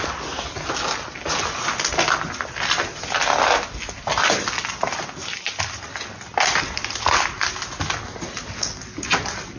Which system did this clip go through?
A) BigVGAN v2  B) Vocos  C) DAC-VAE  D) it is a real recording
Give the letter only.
D